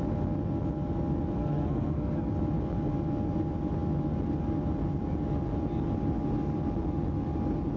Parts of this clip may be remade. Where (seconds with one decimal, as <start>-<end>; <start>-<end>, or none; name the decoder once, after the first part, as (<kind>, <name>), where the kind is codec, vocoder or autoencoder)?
1.4-2.3 (codec, SNAC)